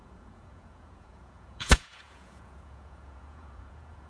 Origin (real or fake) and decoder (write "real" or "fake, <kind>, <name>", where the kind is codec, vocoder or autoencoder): fake, vocoder, Vocos